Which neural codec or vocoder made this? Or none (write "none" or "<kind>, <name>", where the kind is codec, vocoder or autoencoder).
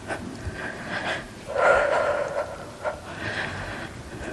none